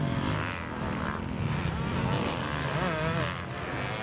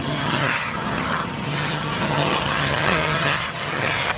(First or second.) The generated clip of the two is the second